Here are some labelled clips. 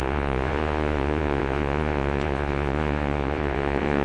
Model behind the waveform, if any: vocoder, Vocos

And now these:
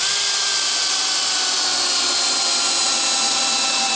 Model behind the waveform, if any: none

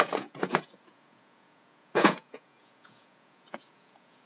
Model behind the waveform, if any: vocoder, Vocos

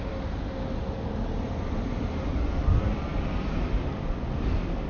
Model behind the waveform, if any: none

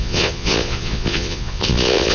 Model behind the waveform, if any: vocoder, Vocos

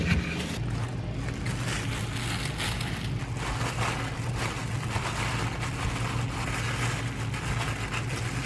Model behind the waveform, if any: none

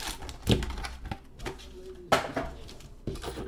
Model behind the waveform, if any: none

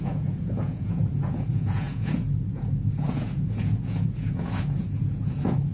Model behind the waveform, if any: vocoder, Vocos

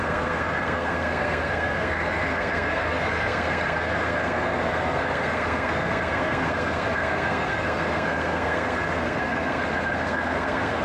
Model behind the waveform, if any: codec, SNAC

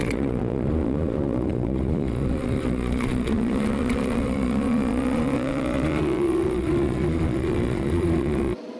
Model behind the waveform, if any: vocoder, Vocos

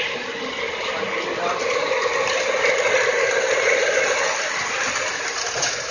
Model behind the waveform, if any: none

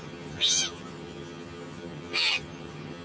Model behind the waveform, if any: vocoder, HiFi-GAN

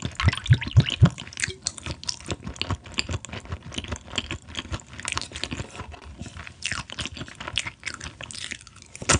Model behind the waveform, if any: none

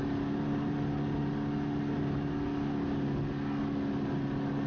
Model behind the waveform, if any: none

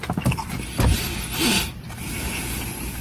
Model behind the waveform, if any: none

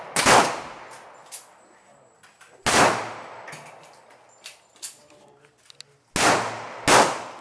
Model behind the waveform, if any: none